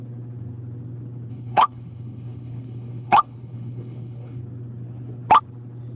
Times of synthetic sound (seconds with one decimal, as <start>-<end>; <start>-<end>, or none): 1.3-4.4